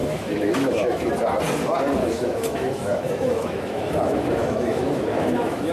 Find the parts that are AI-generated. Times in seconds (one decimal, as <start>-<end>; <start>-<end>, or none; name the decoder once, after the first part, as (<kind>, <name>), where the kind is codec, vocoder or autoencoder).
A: 0.0-1.1 (autoencoder, DAC-VAE); 2.0-5.7